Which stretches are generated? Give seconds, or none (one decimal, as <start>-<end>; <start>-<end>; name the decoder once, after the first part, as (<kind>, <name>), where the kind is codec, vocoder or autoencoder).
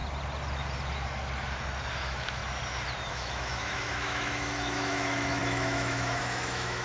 1.9-2.4 (autoencoder, DAC-VAE); 3.1-6.8